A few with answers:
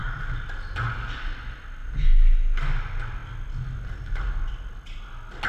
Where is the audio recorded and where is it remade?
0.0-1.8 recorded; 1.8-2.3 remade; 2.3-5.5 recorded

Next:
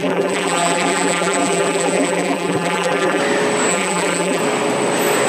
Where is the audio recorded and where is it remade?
0.0-3.2 remade; 3.2-3.7 recorded; 3.7-4.4 remade; 4.4-5.3 recorded

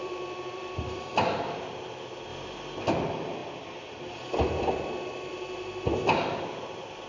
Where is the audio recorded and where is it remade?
0.0-2.3 remade; 2.3-2.9 recorded; 2.9-7.1 remade

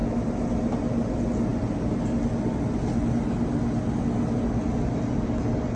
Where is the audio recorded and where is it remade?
0.0-5.8 recorded